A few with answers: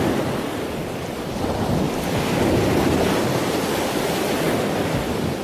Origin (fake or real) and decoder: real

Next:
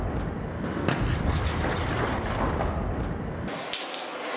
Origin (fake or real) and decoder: real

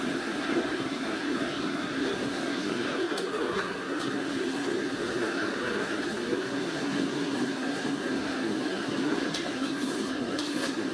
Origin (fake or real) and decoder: fake, codec, SNAC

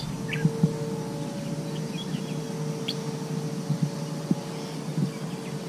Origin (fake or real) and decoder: real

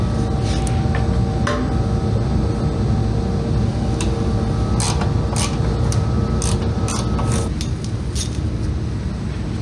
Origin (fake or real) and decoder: real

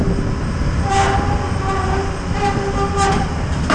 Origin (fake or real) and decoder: real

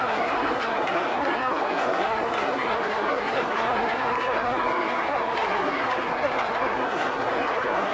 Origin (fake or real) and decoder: fake, codec, SNAC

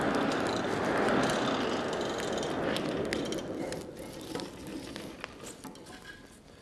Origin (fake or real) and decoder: real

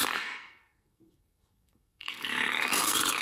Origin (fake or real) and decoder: fake, codec, SNAC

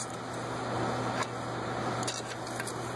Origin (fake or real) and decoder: real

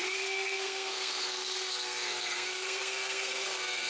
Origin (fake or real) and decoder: fake, codec, SNAC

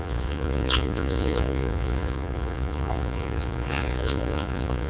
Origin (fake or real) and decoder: fake, vocoder, Vocos